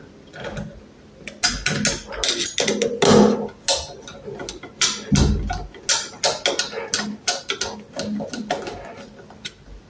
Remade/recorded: recorded